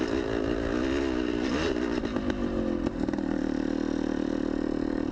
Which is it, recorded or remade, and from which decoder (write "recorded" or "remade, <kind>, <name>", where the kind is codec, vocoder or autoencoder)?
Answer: recorded